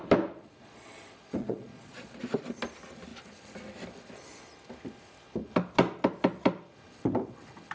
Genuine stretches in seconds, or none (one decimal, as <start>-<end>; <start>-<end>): 0.0-0.4; 2.2-7.7